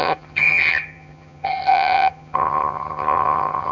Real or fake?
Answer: fake